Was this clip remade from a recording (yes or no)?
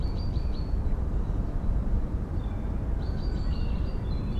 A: yes